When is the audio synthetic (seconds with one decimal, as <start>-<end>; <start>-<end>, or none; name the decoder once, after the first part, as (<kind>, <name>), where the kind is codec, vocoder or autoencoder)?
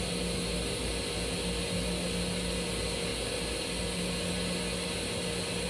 none